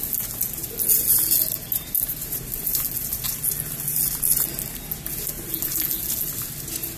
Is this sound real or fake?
real